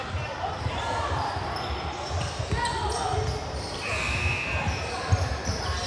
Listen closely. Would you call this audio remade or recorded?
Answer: recorded